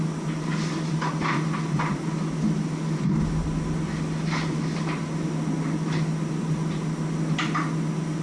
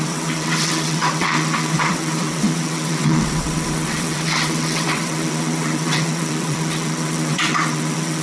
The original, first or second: first